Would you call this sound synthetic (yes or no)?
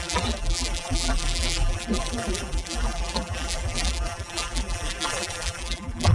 yes